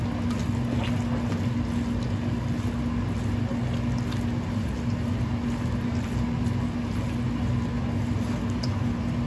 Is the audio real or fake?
real